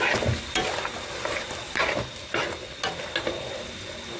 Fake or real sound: real